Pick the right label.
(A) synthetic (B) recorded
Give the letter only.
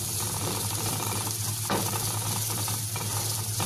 B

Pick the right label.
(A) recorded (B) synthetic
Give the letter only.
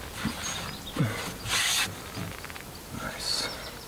A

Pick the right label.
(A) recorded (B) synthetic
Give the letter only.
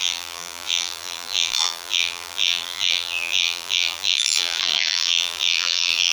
B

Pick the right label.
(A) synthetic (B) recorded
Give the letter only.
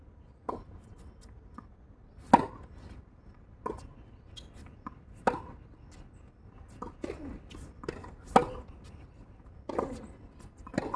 B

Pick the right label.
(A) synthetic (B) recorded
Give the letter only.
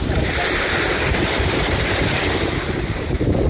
A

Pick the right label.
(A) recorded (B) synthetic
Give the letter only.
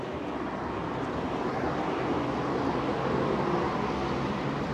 A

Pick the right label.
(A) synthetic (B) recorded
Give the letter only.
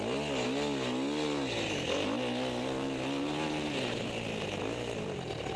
B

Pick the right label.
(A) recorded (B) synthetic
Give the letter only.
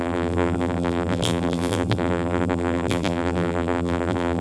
B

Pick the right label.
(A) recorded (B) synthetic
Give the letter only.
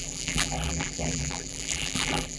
B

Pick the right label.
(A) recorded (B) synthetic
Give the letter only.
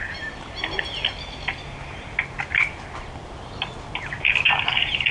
A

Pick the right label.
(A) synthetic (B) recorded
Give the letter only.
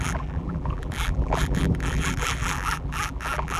A